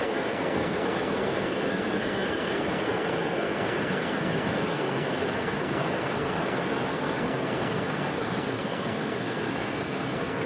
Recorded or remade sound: remade